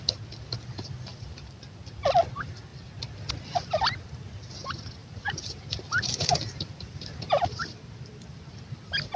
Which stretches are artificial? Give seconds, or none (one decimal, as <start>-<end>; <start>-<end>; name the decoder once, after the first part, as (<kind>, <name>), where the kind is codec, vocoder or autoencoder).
1.1-1.8 (vocoder, BigVGAN v2); 5.0-7.6